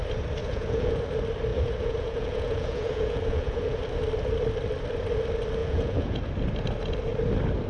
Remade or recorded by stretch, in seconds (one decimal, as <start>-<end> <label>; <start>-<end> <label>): 0.0-0.4 recorded; 0.4-1.0 remade; 1.0-1.5 recorded; 1.5-3.8 remade; 3.8-5.6 recorded; 5.6-6.2 remade; 6.2-7.7 recorded